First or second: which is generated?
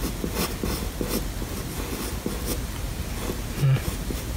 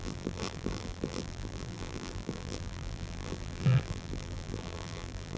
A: second